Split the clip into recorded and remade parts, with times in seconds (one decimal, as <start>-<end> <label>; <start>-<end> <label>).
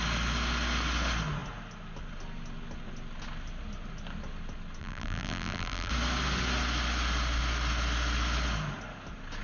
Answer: 0.0-4.8 recorded; 4.8-5.9 remade; 5.9-9.4 recorded